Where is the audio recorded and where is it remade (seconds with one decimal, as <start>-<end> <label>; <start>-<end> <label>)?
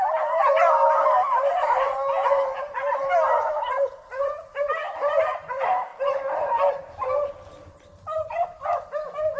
0.0-9.4 recorded